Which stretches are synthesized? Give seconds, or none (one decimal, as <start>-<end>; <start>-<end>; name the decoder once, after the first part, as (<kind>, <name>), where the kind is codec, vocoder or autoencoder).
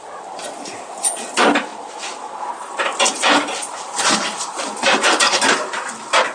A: 1.7-5.5 (vocoder, BigVGAN v2)